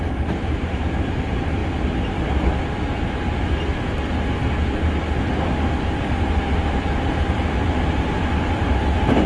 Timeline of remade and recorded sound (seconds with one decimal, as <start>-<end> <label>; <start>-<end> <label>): 0.0-9.3 recorded